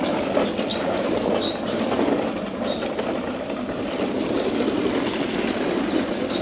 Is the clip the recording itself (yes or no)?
yes